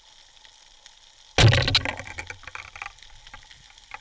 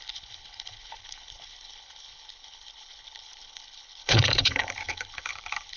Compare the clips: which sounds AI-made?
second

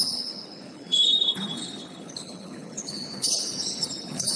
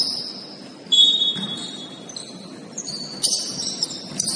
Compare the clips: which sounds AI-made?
first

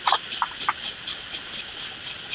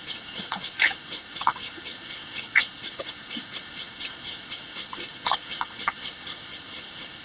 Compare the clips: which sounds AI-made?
second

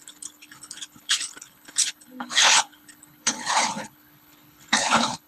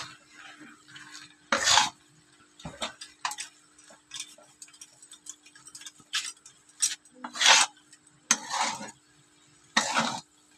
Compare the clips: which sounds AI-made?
first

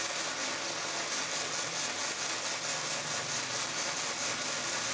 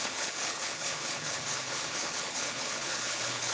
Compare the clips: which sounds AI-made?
second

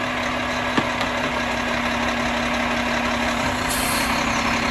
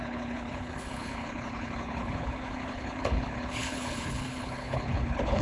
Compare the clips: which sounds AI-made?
second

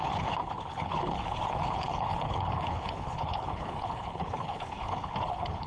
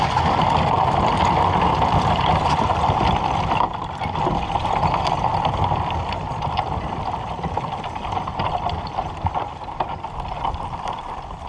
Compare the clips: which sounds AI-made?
first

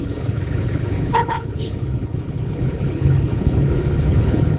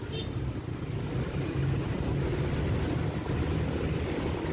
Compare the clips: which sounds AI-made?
first